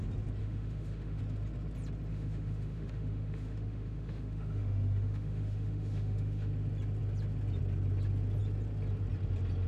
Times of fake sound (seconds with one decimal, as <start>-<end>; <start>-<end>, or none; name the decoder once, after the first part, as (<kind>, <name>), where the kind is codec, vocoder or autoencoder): 0.4-1.2 (autoencoder, DAC-VAE); 2.1-6.5